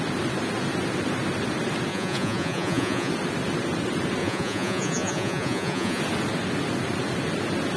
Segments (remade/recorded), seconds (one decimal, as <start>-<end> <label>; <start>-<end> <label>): 0.0-1.9 recorded; 1.9-3.1 remade; 3.1-4.2 recorded; 4.2-6.0 remade; 6.0-7.8 recorded